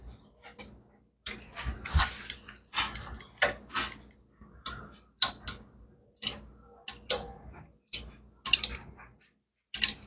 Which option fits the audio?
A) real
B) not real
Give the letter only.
A